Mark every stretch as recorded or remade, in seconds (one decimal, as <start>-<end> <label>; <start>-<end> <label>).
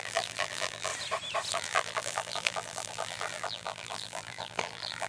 0.0-0.9 remade; 0.9-1.5 recorded; 1.5-5.1 remade